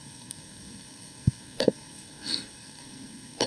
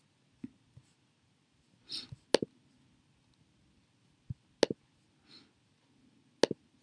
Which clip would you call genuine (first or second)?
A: second